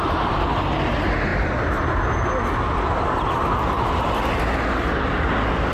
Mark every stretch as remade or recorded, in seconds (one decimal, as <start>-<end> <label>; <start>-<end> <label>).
0.0-5.7 recorded